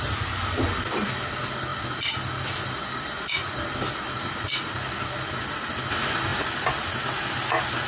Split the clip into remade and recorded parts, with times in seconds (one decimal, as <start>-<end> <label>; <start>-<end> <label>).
0.0-7.9 recorded

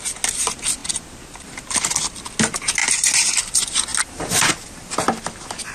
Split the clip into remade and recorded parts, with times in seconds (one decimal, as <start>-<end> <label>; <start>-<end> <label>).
0.0-0.8 recorded; 0.8-1.6 remade; 1.6-2.8 recorded; 2.8-3.4 remade; 3.4-5.7 recorded

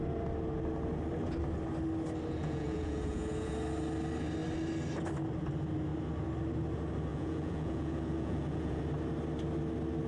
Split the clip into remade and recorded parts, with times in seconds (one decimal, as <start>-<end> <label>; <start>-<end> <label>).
0.0-2.4 recorded; 2.4-3.5 remade; 3.5-7.1 recorded; 7.1-8.8 remade; 8.8-10.1 recorded

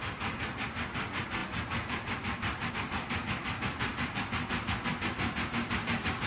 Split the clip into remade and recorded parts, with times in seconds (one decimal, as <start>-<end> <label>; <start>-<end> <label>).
0.0-1.4 remade; 1.4-2.7 recorded; 2.7-3.9 remade; 3.9-5.7 recorded; 5.7-6.3 remade